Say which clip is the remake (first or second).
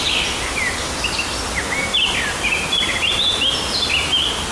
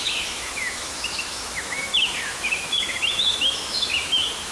second